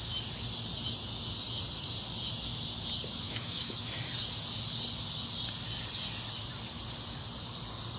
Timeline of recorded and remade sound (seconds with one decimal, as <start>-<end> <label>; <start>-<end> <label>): 0.0-3.1 recorded; 3.1-3.9 remade; 3.9-8.0 recorded